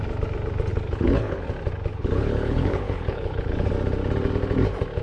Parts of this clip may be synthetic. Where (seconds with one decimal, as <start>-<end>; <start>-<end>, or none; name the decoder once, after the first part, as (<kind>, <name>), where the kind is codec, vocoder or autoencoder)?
0.7-1.5 (codec, HILCodec); 1.9-3.7